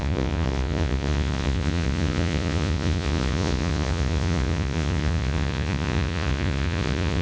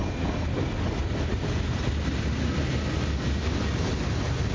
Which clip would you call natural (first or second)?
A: second